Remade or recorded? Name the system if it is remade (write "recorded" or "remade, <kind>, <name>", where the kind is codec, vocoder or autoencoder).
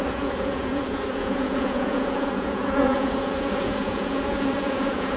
remade, vocoder, Vocos